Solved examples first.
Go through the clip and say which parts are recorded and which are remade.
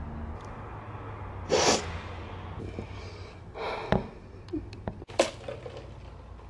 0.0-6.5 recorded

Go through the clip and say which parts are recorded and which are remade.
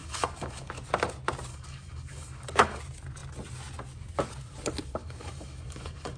0.0-0.7 remade; 0.7-1.5 recorded; 1.5-2.8 remade; 2.8-5.0 recorded; 5.0-6.2 remade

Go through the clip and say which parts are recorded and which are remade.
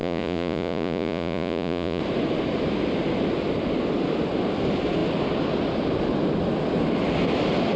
0.0-2.0 remade; 2.0-7.8 recorded